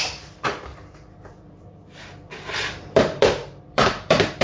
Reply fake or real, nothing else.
fake